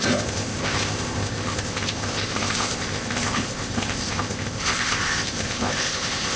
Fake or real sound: fake